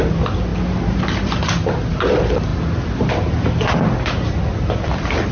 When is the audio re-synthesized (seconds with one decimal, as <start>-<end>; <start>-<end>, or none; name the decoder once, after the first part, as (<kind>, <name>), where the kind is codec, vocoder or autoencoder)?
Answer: none